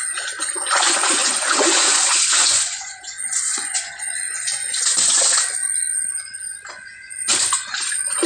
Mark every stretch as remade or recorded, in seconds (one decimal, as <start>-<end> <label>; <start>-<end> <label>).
0.0-5.6 remade; 5.6-6.7 recorded; 6.7-7.3 remade; 7.3-8.3 recorded

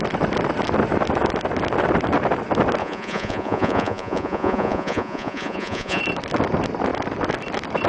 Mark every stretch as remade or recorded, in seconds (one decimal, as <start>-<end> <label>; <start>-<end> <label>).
0.0-2.8 recorded; 2.8-6.0 remade; 6.0-7.9 recorded